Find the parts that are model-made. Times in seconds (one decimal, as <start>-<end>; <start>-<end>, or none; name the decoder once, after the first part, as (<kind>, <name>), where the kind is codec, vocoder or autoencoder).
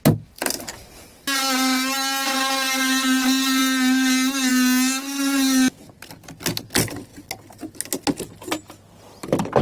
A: none